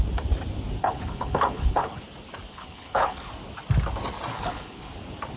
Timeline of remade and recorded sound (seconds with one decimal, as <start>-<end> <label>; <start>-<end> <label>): 0.0-0.8 recorded; 0.8-2.0 remade; 2.0-2.5 recorded; 2.5-3.3 remade; 3.3-4.3 recorded; 4.3-4.9 remade; 4.9-5.4 recorded